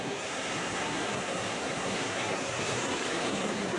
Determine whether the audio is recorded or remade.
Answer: remade